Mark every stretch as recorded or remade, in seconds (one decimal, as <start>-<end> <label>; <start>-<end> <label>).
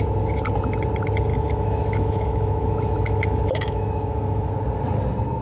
0.0-1.3 recorded; 1.3-4.5 remade; 4.5-5.4 recorded